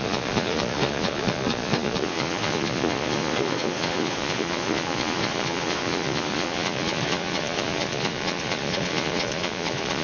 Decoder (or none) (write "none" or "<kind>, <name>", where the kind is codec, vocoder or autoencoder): vocoder, Vocos